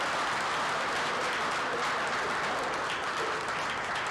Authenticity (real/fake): real